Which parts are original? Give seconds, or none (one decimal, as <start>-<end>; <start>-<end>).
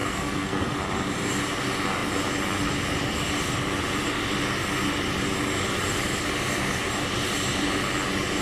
0.7-8.4